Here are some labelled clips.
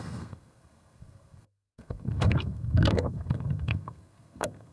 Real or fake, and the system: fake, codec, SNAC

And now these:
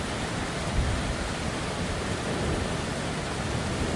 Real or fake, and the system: real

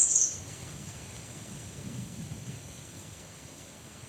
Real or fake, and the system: fake, codec, SNAC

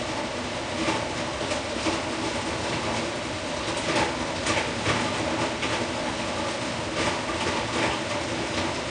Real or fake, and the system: real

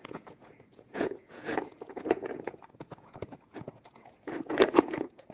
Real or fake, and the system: fake, vocoder, Vocos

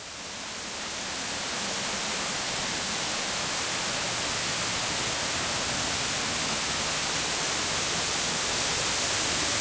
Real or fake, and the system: real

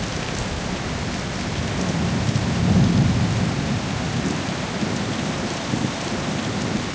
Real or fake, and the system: real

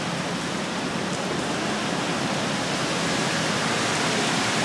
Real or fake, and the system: real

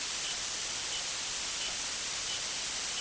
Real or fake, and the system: real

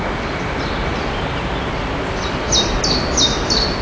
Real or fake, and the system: real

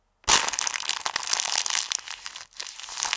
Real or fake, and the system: real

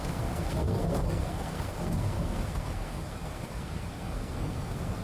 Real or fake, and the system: fake, codec, SNAC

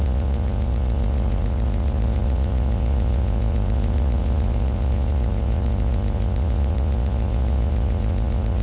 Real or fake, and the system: fake, vocoder, Vocos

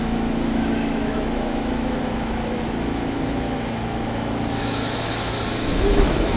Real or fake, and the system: fake, autoencoder, DAC-VAE